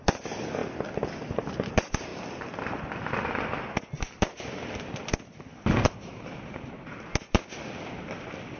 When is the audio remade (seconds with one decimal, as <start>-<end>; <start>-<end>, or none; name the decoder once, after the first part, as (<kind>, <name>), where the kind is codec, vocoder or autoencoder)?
none